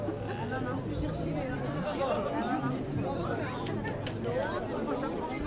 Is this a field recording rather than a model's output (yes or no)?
yes